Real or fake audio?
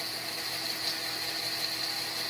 real